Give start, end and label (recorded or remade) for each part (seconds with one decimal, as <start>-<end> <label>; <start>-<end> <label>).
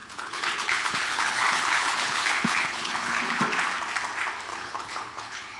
0.0-3.4 remade; 3.4-4.5 recorded; 4.5-5.6 remade